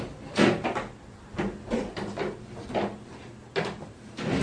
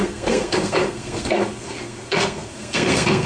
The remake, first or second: second